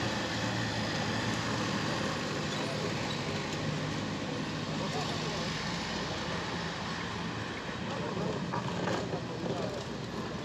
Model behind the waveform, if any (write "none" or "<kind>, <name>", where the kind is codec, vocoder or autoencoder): none